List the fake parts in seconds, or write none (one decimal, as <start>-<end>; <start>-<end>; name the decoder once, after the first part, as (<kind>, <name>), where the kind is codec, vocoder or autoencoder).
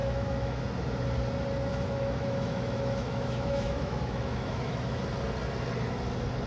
0.0-0.6 (autoencoder, DAC-VAE); 1.7-5.0